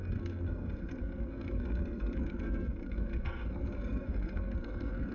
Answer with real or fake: fake